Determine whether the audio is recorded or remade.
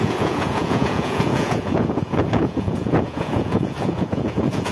remade